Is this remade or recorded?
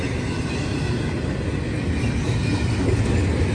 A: recorded